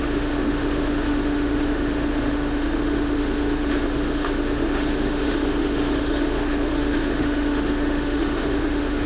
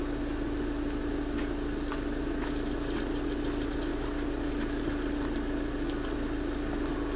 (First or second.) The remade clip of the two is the first